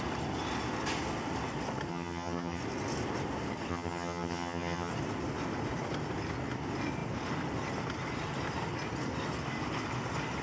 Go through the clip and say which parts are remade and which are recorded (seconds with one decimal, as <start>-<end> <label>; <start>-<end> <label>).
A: 0.0-1.9 recorded; 1.9-2.6 remade; 2.6-3.7 recorded; 3.7-4.9 remade; 4.9-10.4 recorded